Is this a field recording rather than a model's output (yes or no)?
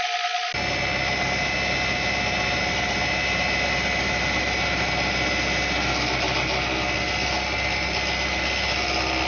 yes